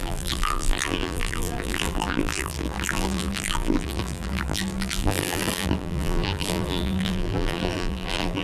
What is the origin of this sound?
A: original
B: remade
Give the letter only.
B